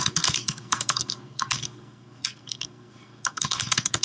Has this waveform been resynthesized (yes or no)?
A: yes